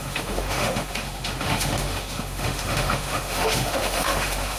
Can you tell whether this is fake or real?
fake